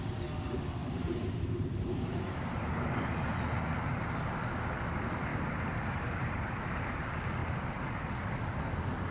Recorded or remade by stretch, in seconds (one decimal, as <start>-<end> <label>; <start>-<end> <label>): 0.0-0.8 recorded; 0.8-3.4 remade; 3.4-5.3 recorded; 5.3-7.0 remade; 7.0-7.4 recorded; 7.4-8.1 remade; 8.1-9.1 recorded